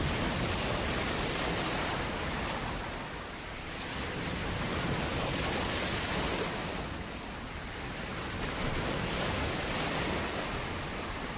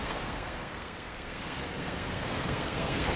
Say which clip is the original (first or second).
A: first